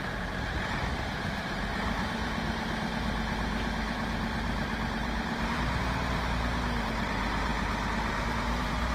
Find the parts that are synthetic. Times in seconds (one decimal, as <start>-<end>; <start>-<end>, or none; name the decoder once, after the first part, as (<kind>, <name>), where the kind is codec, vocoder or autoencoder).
0.0-7.5 (vocoder, BigVGAN v2); 8.1-8.9